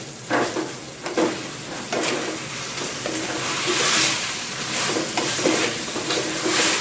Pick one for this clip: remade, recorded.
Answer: recorded